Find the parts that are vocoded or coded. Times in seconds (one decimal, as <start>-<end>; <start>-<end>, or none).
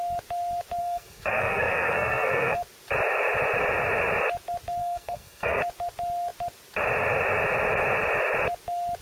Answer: 0.8-2.6; 4.8-5.6